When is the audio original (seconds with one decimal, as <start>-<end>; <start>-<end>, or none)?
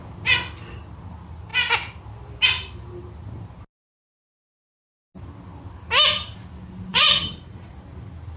0.0-6.9; 7.7-8.4